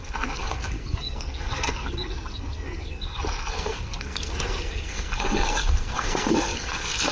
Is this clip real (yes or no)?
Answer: no